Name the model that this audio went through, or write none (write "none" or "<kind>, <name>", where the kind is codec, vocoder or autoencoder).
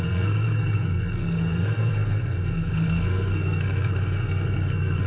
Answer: codec, SNAC